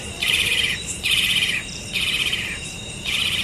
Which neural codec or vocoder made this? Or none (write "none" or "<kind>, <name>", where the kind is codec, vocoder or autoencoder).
vocoder, BigVGAN v2